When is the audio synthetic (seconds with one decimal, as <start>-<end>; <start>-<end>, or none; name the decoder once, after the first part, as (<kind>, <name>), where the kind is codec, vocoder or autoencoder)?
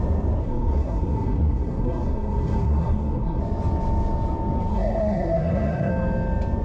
0.4-3.4 (codec, SNAC); 4.7-5.9